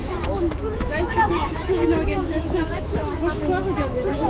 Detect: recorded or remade remade